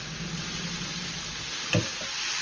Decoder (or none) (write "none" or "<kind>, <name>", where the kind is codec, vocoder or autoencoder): none